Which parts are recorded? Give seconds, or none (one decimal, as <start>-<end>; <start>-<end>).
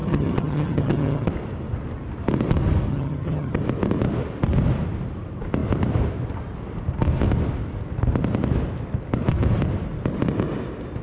1.3-2.9; 3.6-11.0